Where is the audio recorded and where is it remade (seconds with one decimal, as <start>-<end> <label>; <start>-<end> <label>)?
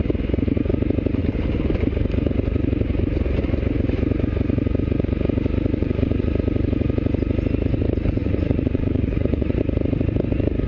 0.0-5.8 recorded; 5.8-6.3 remade; 6.3-8.2 recorded; 8.2-9.6 remade; 9.6-10.7 recorded